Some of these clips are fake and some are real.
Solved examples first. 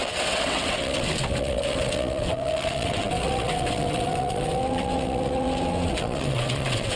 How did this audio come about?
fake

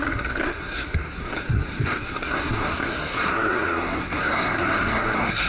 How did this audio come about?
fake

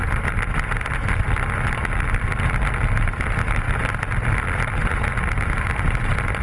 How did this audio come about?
real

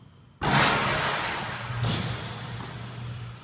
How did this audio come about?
real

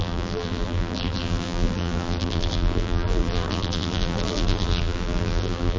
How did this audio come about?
fake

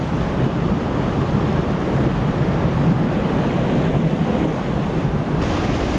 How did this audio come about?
real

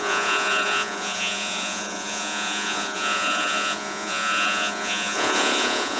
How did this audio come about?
fake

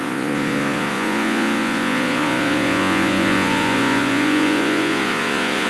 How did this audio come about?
fake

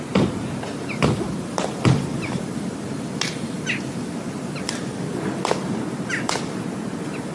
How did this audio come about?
real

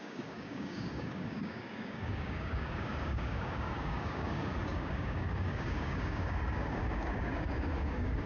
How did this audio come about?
fake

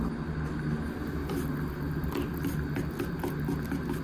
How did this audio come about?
real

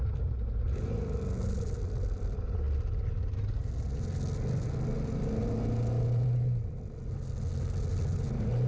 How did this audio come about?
real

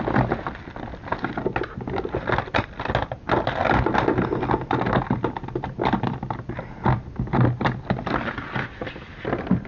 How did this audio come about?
real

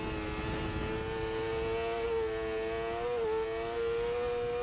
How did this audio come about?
real